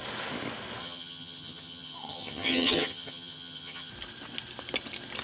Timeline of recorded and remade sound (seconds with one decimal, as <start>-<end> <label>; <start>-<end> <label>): 0.0-0.8 recorded; 0.8-3.9 remade; 3.9-5.2 recorded